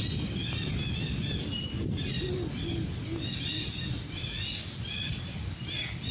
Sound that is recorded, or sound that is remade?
recorded